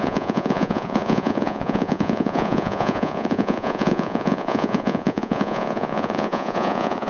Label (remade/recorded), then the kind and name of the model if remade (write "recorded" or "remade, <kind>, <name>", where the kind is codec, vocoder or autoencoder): remade, vocoder, Vocos